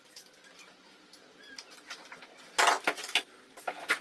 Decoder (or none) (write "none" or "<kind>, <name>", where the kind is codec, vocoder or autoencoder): none